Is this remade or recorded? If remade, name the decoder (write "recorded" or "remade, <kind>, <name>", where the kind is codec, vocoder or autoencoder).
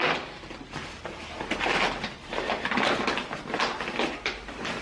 recorded